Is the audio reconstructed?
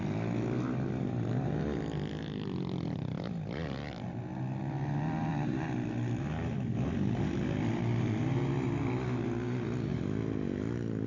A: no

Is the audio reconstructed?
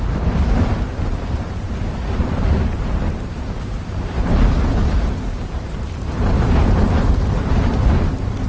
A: yes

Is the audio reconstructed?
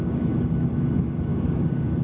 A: yes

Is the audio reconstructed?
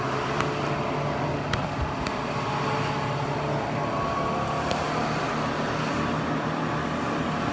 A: no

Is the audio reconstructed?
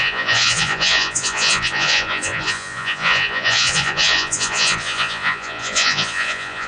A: yes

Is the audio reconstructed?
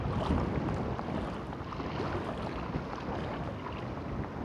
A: no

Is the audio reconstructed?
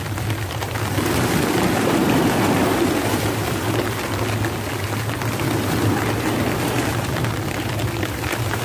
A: no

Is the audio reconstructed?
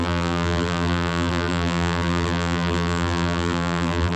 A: yes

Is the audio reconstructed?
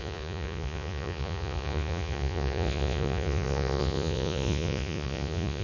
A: yes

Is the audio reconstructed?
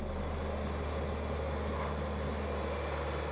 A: no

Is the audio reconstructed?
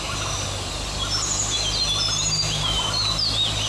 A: no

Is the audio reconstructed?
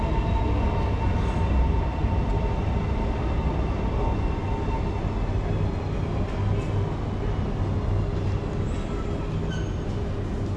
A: no